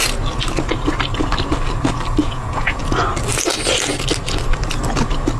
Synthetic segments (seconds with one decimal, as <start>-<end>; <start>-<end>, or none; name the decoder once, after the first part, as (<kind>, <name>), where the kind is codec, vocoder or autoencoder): 2.2-2.8 (vocoder, Vocos)